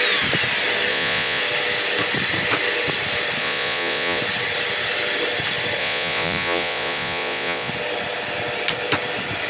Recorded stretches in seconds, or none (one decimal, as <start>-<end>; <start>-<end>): 0.0-0.9; 1.4-3.4; 4.2-5.8; 7.7-9.5